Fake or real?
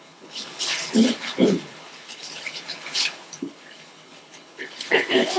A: fake